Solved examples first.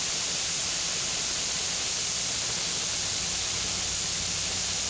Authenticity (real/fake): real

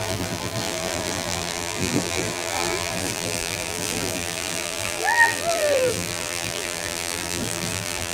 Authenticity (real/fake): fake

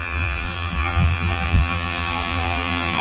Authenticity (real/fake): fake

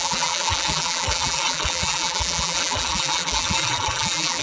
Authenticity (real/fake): fake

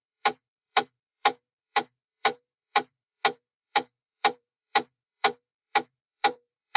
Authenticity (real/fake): fake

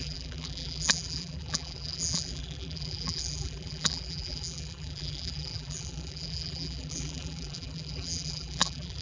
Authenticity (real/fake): fake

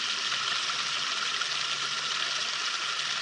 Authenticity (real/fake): real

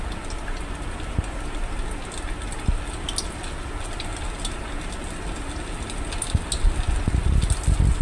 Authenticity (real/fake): real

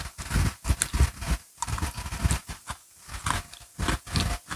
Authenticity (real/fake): real